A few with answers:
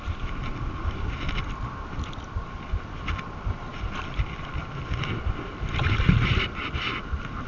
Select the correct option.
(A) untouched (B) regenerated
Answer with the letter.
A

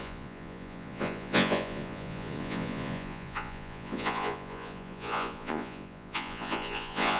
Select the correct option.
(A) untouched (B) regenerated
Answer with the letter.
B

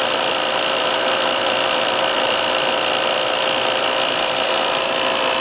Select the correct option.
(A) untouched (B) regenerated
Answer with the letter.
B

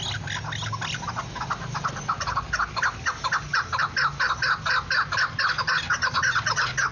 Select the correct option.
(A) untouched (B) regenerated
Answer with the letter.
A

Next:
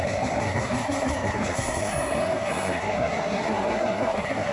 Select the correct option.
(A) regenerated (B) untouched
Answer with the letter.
A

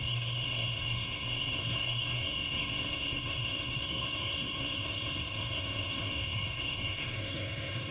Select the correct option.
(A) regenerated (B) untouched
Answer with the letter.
A